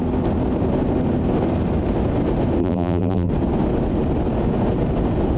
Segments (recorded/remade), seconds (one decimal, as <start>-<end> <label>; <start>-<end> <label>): 0.0-2.6 recorded; 2.6-3.3 remade; 3.3-5.4 recorded